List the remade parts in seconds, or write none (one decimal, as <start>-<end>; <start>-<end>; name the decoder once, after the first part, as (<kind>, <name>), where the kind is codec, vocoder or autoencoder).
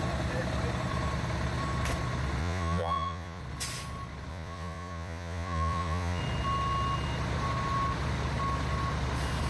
2.4-3.4 (vocoder, Vocos); 4.3-6.2